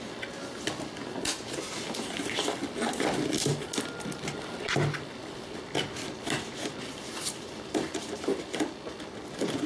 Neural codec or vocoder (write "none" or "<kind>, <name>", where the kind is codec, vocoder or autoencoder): none